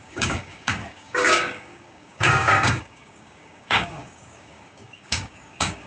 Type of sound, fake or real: fake